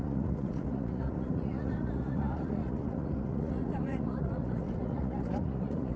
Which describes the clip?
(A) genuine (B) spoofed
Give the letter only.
B